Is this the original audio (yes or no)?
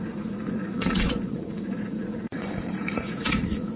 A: no